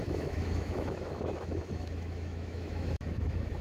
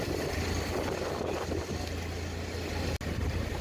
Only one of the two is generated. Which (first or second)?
first